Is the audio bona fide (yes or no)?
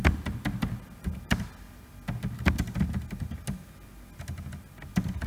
yes